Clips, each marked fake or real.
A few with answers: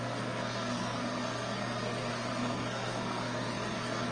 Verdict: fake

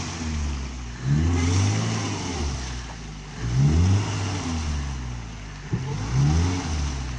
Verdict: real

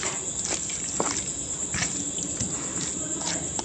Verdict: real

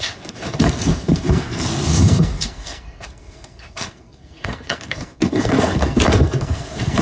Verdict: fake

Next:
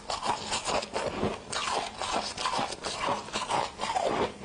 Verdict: real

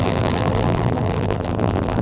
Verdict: fake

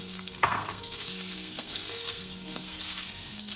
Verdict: fake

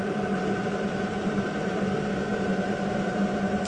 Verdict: fake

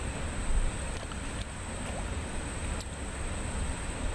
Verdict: real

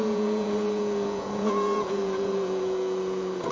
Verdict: fake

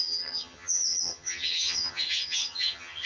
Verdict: fake